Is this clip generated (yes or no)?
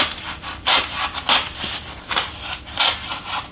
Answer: no